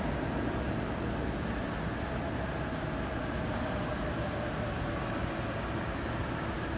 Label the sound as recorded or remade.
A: recorded